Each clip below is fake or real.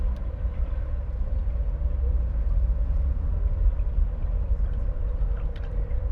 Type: real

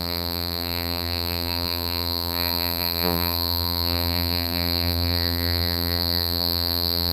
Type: fake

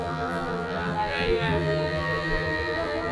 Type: fake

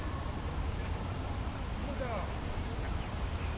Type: fake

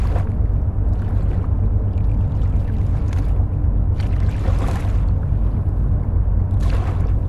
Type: real